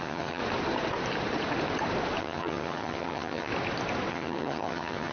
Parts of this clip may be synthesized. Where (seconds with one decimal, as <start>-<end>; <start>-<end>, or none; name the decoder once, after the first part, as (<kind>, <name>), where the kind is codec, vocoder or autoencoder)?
0.0-0.4 (vocoder, HiFi-GAN); 2.2-3.5; 4.1-5.1

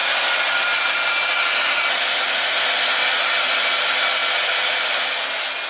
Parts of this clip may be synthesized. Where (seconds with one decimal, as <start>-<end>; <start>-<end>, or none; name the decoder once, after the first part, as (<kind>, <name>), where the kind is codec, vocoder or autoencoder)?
none